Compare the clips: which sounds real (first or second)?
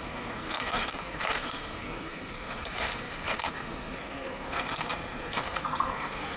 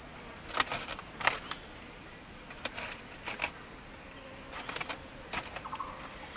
second